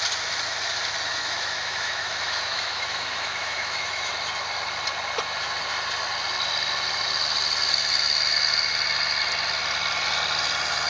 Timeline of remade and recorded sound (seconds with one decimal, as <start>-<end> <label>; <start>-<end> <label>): 0.0-1.2 recorded; 1.2-4.1 remade; 4.1-10.9 recorded